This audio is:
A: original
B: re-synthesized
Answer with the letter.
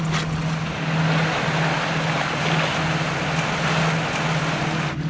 A